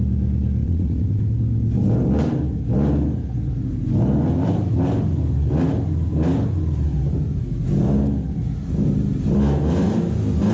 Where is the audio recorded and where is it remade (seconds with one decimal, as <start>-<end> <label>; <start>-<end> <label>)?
0.0-0.6 recorded; 0.6-1.3 remade; 1.3-10.5 recorded